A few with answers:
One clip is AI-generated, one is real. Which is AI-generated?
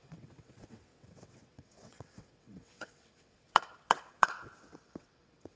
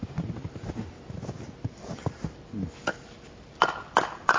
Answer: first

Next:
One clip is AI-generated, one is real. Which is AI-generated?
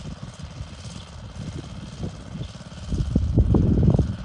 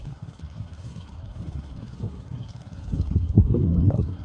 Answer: second